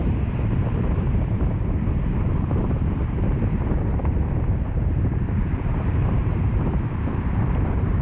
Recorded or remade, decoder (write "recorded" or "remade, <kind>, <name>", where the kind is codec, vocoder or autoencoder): remade, vocoder, BigVGAN v2